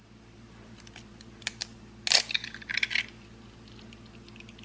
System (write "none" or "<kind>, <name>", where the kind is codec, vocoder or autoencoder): none